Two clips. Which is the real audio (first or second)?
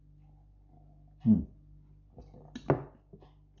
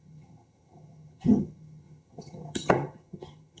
first